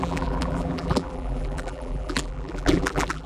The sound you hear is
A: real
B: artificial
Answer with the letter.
B